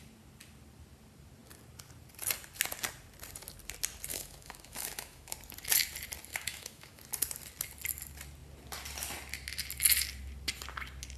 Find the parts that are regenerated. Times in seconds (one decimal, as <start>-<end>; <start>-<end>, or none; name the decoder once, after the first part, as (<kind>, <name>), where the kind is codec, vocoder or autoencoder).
4.1-5.3 (autoencoder, DAC-VAE); 6.3-7.0

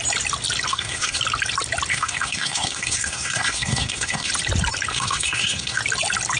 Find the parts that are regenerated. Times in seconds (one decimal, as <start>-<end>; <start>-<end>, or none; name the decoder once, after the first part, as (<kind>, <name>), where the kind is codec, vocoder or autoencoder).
0.7-1.2 (codec, SNAC); 1.9-4.3; 4.9-5.8

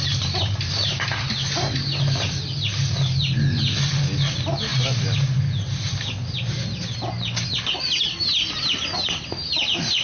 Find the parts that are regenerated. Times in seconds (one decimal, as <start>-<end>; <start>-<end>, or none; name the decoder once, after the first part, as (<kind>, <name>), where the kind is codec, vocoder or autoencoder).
none